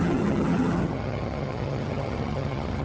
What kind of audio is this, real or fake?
fake